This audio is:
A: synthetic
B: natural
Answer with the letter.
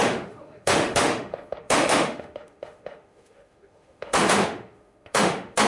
A